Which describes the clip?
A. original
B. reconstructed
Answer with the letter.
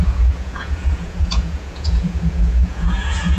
B